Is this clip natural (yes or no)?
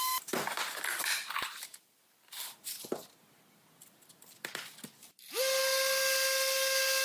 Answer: yes